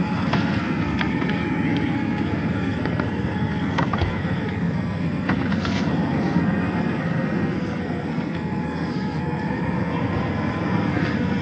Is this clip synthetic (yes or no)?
yes